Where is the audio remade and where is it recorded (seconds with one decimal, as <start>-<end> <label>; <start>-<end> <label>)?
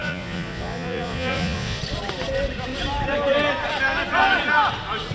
0.0-1.8 remade; 1.8-5.1 recorded